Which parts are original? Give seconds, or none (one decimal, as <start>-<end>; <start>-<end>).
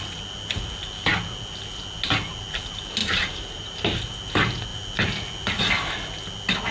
0.0-3.0; 4.0-6.7